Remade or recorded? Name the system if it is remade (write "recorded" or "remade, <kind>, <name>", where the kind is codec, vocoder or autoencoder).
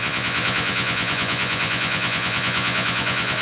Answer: remade, vocoder, Vocos